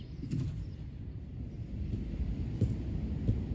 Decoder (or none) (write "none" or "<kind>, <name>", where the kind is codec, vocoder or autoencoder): none